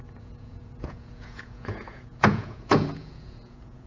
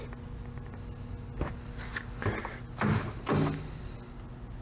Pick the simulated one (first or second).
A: first